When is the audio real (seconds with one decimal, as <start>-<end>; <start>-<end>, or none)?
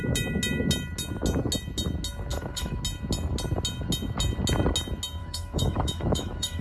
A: 0.0-2.3; 2.8-5.2